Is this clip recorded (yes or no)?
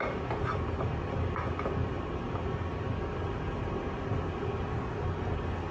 yes